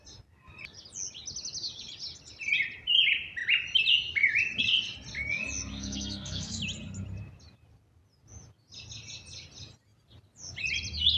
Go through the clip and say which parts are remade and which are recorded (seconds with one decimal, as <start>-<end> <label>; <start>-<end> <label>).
0.0-5.7 recorded; 5.7-6.6 remade; 6.6-11.2 recorded